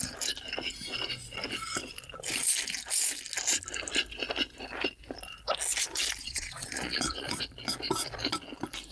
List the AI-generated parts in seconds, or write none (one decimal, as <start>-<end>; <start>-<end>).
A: 6.2-7.4